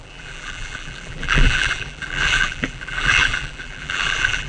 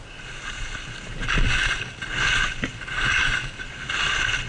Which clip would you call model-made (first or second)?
first